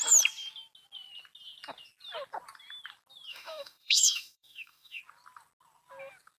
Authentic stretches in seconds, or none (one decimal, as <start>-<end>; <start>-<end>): 0.0-3.3; 5.0-6.4